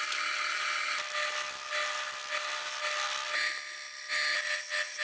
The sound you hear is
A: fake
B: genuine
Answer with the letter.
B